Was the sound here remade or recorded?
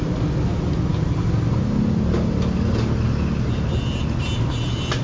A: recorded